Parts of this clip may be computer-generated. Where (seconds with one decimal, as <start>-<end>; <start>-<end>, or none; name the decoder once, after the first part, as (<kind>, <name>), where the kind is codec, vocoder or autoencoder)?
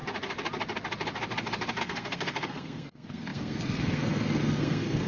1.8-5.1 (codec, SNAC)